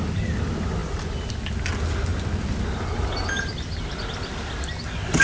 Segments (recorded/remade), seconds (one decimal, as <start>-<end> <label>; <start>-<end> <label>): 0.0-5.2 recorded